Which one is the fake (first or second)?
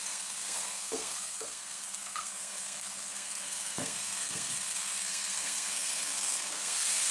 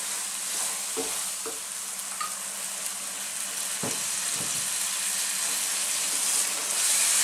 first